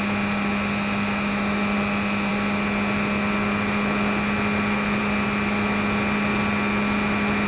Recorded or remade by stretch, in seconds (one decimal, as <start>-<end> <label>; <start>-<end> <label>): 0.0-7.5 recorded